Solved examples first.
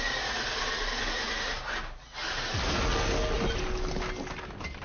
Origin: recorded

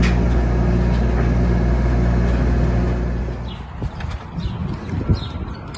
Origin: recorded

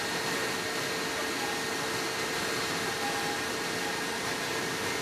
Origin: recorded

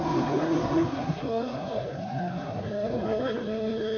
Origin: remade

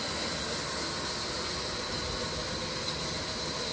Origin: recorded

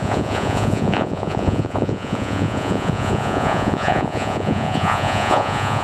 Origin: remade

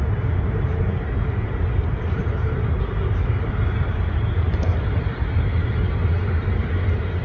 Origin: recorded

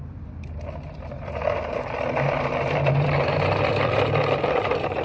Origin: remade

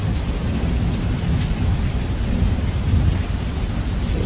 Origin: recorded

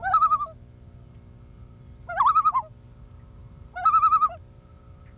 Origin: recorded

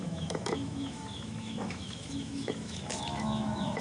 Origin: remade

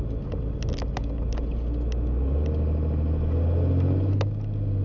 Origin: recorded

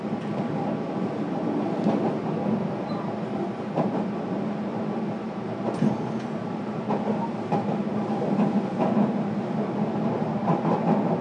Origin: recorded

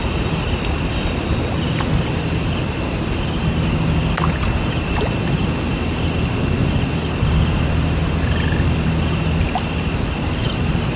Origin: recorded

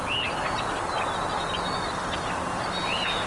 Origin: recorded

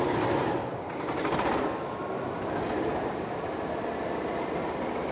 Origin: recorded